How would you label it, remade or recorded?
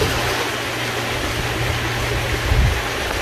recorded